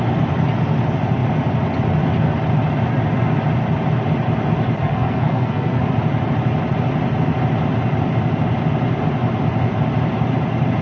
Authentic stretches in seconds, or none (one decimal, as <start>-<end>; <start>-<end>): 0.0-4.8; 5.8-10.8